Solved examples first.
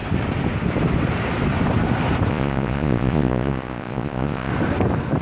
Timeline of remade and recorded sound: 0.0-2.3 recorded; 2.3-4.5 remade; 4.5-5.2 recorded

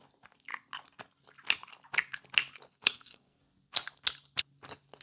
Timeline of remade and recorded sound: 0.0-2.7 recorded; 2.7-3.4 remade; 3.4-5.0 recorded

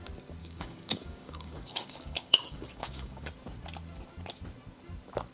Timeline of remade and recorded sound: 0.0-0.4 recorded; 0.4-3.3 remade; 3.3-5.3 recorded

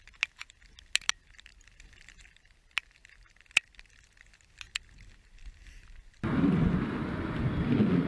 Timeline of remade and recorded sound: 0.0-8.1 recorded

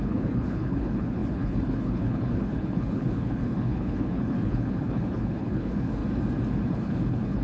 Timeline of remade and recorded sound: 0.0-6.0 remade; 6.0-6.7 recorded; 6.7-7.4 remade

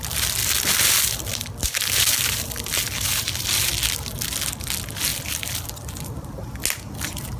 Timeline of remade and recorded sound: 0.0-0.4 recorded; 0.4-3.7 remade; 3.7-5.1 recorded; 5.1-6.0 remade; 6.0-7.4 recorded

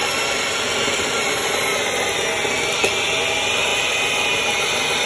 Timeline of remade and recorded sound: 0.0-5.1 recorded

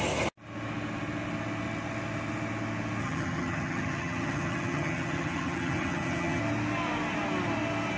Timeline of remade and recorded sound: 0.0-3.0 recorded; 3.0-6.4 remade; 6.4-8.0 recorded